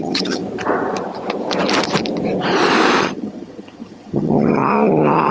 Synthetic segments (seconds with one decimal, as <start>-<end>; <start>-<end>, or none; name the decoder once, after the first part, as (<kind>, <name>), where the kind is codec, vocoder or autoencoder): 0.0-0.4 (vocoder, HiFi-GAN); 3.0-4.6